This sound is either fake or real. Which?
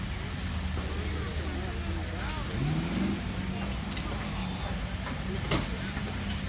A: real